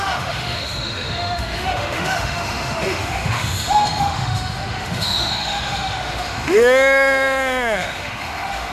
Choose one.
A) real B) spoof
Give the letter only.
B